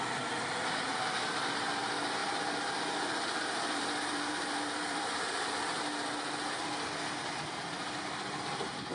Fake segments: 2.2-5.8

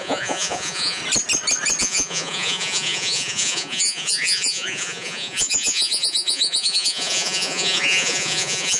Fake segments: 0.0-1.0; 1.8-8.8

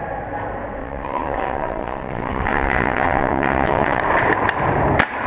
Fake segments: 0.8-4.0

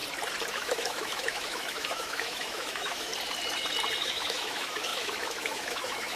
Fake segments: 0.5-3.1; 4.0-6.2

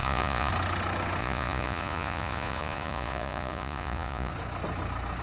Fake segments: 0.0-0.5; 1.2-4.3

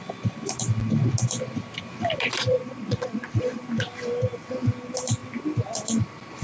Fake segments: 2.5-3.6

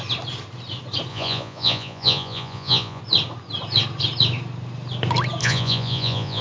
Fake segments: 1.1-3.0; 5.4-6.4

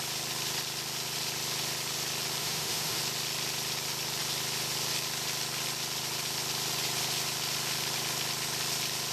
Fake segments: 2.4-3.0